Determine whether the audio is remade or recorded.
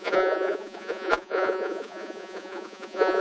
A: remade